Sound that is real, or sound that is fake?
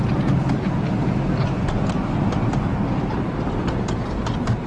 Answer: real